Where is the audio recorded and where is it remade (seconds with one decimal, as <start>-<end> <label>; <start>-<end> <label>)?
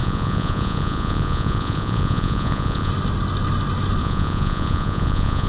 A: 0.0-2.9 remade; 2.9-4.0 recorded; 4.0-5.5 remade